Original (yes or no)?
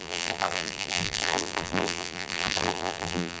no